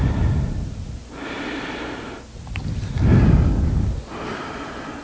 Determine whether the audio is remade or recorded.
recorded